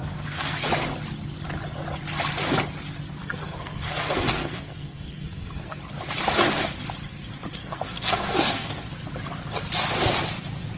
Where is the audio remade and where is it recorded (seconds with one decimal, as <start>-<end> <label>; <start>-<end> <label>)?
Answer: 0.0-0.7 remade; 0.7-3.2 recorded; 3.2-5.8 remade; 5.8-7.6 recorded; 7.6-8.9 remade; 8.9-10.8 recorded